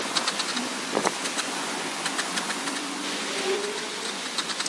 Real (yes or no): no